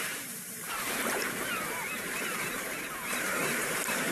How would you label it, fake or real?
fake